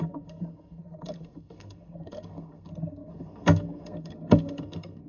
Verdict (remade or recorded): remade